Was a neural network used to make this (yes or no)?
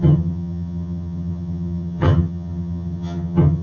yes